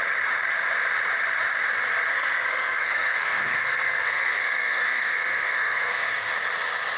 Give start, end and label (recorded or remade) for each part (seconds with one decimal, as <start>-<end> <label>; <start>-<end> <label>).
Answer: 0.0-2.1 recorded; 2.1-6.3 remade; 6.3-7.0 recorded

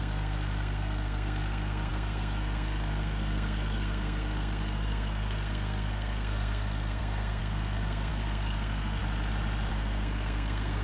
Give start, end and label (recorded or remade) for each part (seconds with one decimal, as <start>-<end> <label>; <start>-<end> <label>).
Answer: 0.0-9.0 remade; 9.0-9.7 recorded; 9.7-10.8 remade